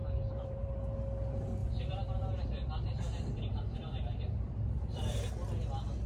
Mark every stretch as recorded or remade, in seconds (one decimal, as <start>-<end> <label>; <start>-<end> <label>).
0.0-0.7 remade; 0.7-1.6 recorded; 1.6-5.3 remade; 5.3-6.1 recorded